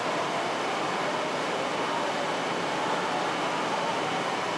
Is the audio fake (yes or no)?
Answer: no